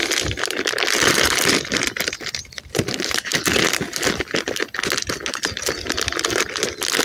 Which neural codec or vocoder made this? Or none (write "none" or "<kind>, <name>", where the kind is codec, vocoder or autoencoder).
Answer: none